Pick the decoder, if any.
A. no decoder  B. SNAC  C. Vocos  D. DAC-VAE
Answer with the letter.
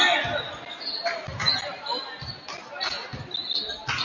A